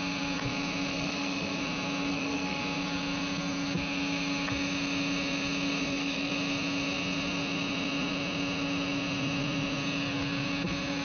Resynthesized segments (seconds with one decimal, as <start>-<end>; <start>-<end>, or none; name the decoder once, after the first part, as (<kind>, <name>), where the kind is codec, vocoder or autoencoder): 0.9-1.6 (codec, SNAC); 2.1-2.6; 5.8-6.3